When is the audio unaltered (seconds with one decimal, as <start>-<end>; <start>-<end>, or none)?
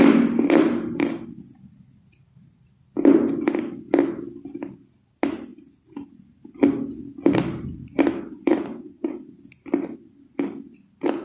0.0-8.7; 9.3-11.2